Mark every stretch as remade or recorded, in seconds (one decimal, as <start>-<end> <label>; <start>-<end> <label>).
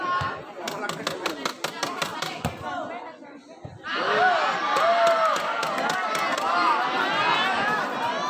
0.0-2.1 recorded; 2.1-2.7 remade; 2.7-4.6 recorded; 4.6-5.6 remade; 5.6-8.3 recorded